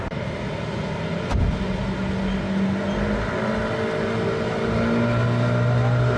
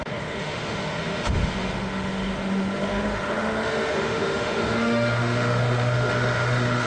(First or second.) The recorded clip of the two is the first